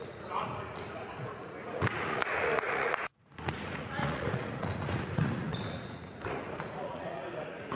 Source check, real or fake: fake